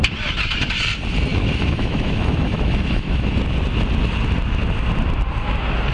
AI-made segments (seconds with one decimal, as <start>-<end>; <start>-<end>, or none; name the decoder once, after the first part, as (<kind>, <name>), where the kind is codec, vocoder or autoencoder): 1.3-3.3 (autoencoder, DAC-VAE)